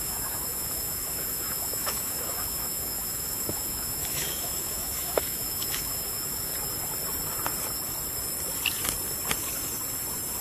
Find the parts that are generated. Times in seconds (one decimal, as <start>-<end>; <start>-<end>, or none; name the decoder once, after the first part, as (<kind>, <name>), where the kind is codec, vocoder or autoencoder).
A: 0.0-6.5 (autoencoder, DAC-VAE)